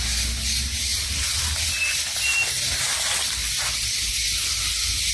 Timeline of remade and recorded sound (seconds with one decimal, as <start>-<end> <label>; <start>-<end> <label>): 0.0-5.1 recorded